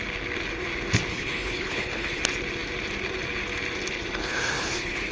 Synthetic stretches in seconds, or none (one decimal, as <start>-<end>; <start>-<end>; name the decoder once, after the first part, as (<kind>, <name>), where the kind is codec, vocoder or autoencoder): 1.1-2.2 (codec, HILCodec); 4.2-5.1